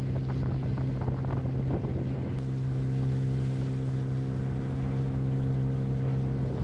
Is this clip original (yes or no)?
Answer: yes